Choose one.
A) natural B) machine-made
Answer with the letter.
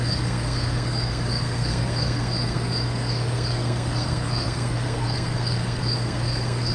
B